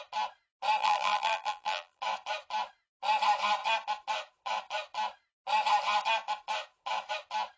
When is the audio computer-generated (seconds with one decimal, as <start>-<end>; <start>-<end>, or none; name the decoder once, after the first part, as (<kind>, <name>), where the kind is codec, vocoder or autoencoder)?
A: 0.8-2.0 (vocoder, BigVGAN v2)